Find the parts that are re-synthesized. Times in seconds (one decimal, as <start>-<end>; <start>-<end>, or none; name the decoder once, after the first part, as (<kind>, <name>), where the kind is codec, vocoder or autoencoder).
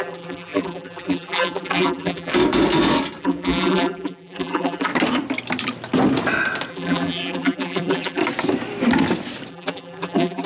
0.0-2.3 (vocoder, BigVGAN v2); 3.2-4.9; 6.7-8.2; 9.5-10.5